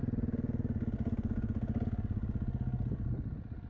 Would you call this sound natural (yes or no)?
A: yes